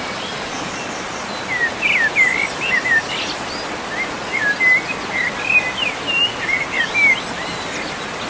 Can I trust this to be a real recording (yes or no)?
yes